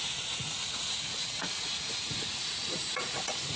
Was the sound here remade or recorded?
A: remade